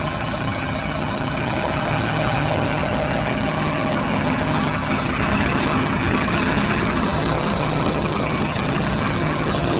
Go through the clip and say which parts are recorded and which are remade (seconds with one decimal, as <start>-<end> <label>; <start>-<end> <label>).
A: 0.0-9.8 remade